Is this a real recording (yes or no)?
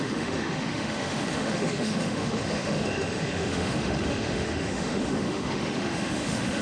no